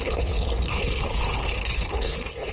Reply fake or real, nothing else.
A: fake